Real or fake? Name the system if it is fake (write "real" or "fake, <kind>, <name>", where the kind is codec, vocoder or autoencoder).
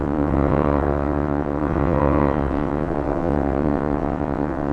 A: fake, vocoder, WaveNeXt